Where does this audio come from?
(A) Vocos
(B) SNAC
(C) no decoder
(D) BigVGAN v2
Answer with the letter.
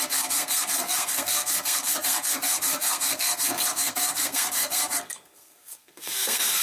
B